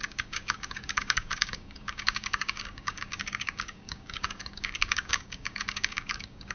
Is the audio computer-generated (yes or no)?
yes